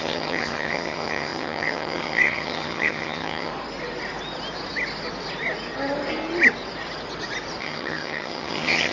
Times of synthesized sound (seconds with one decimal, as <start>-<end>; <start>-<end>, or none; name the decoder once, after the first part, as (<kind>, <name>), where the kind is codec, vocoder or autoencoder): 0.0-3.5 (vocoder, HiFi-GAN); 7.6-8.9